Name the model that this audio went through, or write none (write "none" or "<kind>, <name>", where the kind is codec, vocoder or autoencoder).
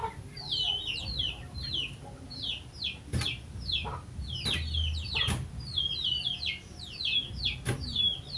none